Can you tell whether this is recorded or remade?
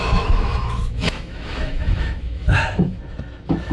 remade